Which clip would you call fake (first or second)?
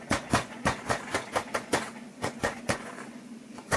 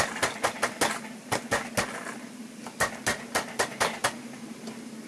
first